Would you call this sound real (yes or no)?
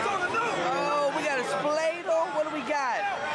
yes